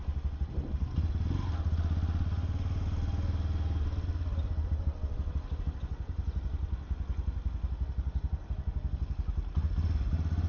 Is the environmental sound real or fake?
real